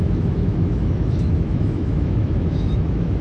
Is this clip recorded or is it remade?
remade